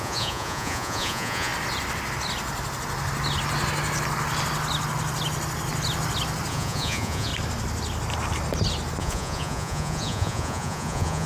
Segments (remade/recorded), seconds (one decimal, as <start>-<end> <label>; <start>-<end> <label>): 0.0-1.5 remade; 1.5-6.5 recorded; 6.5-7.3 remade; 7.3-9.0 recorded; 9.0-11.3 remade